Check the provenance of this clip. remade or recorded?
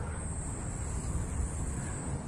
recorded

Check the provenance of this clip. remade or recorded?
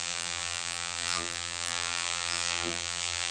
remade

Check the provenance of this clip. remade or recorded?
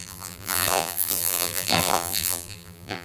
remade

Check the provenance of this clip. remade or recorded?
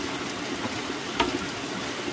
recorded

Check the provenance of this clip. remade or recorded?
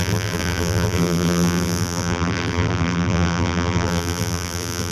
remade